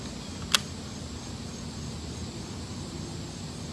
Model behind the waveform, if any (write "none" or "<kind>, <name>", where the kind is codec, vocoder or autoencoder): none